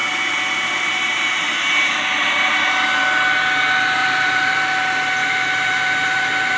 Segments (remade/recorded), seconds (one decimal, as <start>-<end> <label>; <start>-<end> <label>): 0.0-2.8 remade; 2.8-4.0 recorded; 4.0-4.6 remade; 4.6-5.2 recorded; 5.2-6.6 remade